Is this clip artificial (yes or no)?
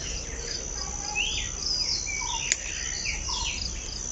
no